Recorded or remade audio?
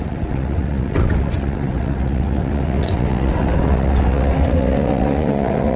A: remade